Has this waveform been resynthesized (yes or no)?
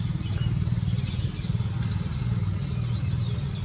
no